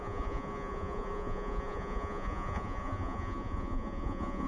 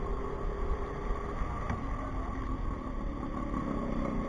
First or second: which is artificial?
first